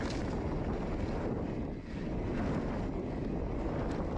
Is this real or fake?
real